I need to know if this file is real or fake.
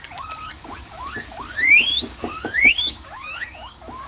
fake